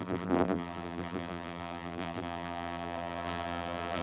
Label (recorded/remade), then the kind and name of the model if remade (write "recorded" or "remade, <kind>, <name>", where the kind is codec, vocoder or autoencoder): remade, vocoder, BigVGAN v2